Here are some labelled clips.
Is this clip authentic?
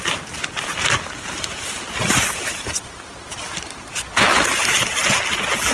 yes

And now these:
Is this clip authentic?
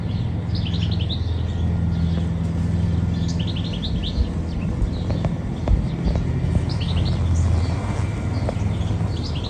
yes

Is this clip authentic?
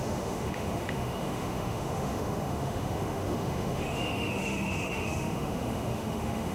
no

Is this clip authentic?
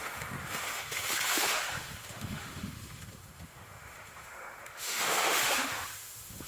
no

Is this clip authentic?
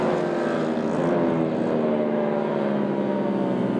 yes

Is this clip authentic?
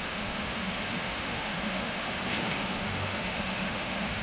no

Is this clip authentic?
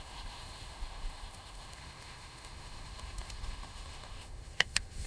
no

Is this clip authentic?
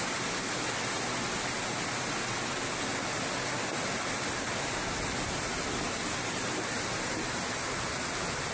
yes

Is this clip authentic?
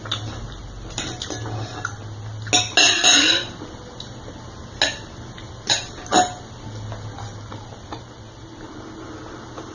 yes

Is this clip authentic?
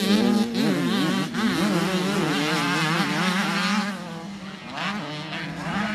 yes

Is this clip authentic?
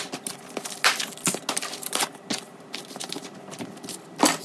yes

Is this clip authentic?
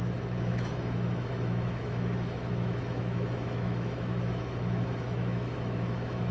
no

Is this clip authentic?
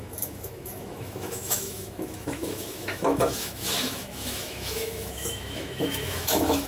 no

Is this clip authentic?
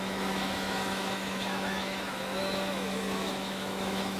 no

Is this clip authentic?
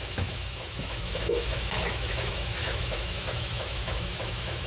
no